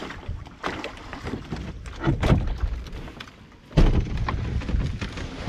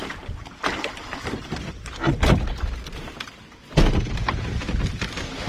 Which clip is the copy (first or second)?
first